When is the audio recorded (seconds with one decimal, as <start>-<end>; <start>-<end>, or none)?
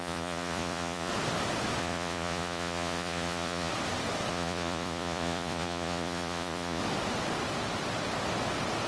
1.1-1.8; 3.7-4.3; 6.8-8.9